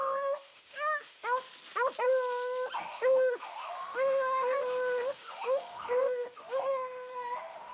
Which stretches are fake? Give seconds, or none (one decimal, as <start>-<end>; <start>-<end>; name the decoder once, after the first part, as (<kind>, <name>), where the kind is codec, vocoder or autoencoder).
0.0-1.5 (autoencoder, DAC-VAE); 2.8-7.7